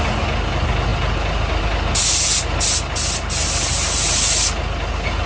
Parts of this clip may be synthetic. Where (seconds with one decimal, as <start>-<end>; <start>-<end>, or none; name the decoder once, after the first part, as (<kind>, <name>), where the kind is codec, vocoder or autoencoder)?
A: none